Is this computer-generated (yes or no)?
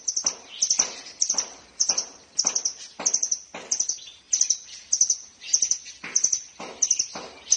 no